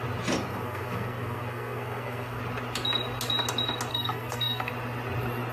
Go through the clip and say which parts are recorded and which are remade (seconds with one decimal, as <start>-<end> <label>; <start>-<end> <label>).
0.0-0.5 recorded; 0.5-2.4 remade; 2.4-3.9 recorded; 3.9-4.7 remade; 4.7-5.5 recorded